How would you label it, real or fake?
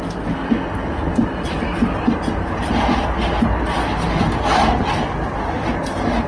real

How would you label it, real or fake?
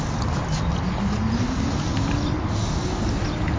real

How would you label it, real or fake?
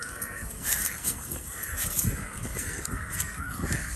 fake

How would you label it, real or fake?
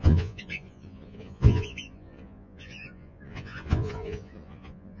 fake